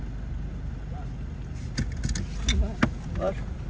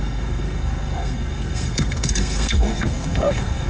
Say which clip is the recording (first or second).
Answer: first